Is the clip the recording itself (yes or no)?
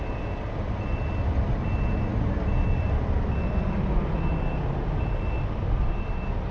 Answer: yes